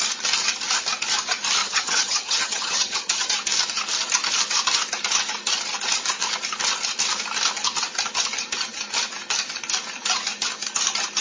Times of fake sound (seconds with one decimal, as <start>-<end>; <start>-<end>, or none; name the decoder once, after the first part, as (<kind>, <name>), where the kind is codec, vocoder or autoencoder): 1.6-3.3 (vocoder, HiFi-GAN)